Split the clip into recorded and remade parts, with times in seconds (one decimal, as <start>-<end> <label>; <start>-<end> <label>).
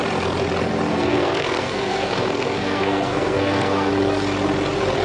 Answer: 0.0-0.9 recorded; 0.9-3.9 remade; 3.9-5.0 recorded